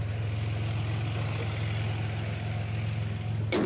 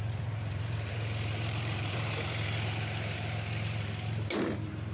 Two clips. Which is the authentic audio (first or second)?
first